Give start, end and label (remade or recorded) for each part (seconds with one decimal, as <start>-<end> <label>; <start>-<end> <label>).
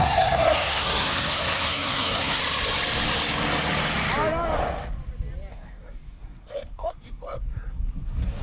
0.0-2.4 remade; 2.4-5.5 recorded; 5.5-8.4 remade